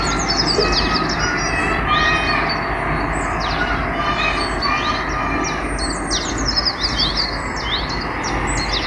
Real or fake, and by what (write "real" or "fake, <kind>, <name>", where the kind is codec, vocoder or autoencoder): real